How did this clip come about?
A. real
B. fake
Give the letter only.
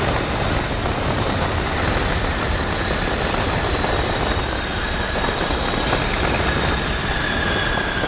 A